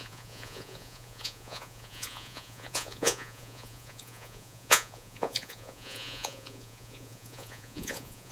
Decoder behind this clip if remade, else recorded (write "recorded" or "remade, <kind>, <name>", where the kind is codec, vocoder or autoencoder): remade, vocoder, Vocos